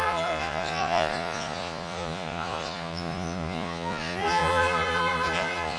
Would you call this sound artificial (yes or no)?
yes